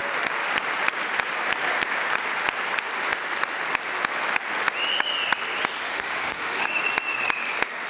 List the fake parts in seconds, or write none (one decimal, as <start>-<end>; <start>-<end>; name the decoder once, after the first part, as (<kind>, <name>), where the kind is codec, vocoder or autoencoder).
5.9-6.8 (autoencoder, DAC-VAE)